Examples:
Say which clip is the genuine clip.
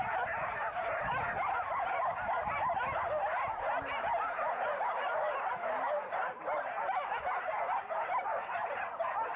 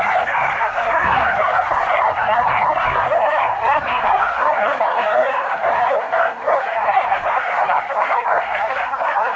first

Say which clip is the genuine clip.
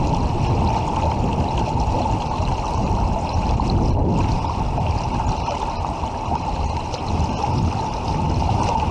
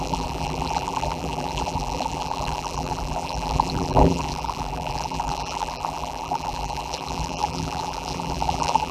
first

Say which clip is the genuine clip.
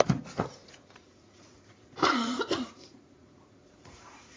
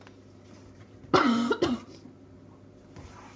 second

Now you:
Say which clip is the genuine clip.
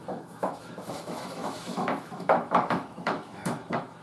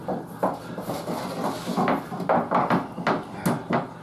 second